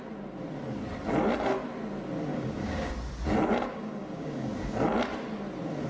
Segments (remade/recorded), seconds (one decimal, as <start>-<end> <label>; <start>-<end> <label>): 0.0-2.3 recorded; 2.3-2.9 remade; 2.9-3.7 recorded; 3.7-4.5 remade; 4.5-5.9 recorded